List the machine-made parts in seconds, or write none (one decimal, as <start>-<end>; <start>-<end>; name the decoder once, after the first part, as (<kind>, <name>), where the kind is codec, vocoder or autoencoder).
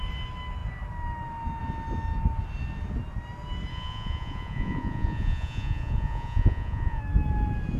3.7-7.0 (vocoder, Vocos)